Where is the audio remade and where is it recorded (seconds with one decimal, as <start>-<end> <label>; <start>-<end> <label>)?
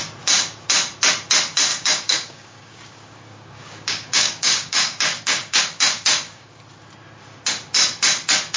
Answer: 0.0-1.7 recorded; 1.7-6.6 remade; 6.6-8.6 recorded